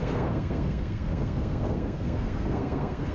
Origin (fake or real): fake